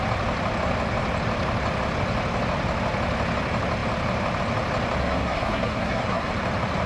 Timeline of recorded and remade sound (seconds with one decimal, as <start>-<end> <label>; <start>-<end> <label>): 0.0-5.0 recorded; 5.0-6.3 remade; 6.3-6.9 recorded